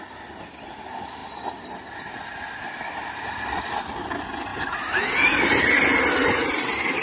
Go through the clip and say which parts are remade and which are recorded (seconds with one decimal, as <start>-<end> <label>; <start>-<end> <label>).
0.0-7.0 recorded

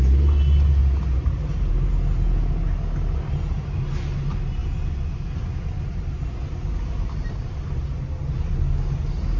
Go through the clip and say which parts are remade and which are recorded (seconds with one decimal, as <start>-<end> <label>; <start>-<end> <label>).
0.0-9.4 recorded

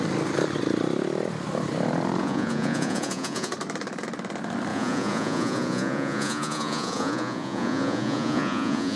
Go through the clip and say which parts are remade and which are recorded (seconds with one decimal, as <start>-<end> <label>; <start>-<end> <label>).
0.0-2.2 recorded; 2.2-3.5 remade; 3.5-4.7 recorded; 4.7-9.0 remade

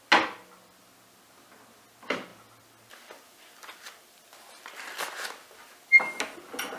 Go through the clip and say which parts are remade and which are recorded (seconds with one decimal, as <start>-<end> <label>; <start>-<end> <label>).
0.0-6.8 recorded

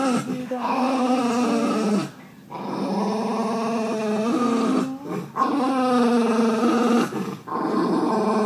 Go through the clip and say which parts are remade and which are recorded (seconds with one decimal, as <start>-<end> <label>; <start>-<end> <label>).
0.0-0.4 recorded; 0.4-1.2 remade; 1.2-8.5 recorded

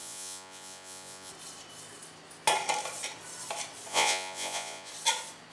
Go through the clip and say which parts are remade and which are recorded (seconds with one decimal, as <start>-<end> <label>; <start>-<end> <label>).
0.0-1.3 remade; 1.3-3.9 recorded; 3.9-4.9 remade; 4.9-5.5 recorded

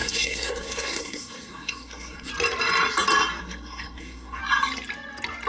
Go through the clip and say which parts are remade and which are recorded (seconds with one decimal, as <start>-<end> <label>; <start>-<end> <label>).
0.0-2.3 remade; 2.3-3.4 recorded; 3.4-4.4 remade; 4.4-5.5 recorded

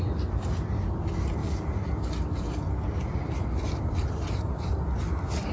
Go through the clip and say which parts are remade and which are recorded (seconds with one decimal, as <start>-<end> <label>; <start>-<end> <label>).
0.0-5.5 recorded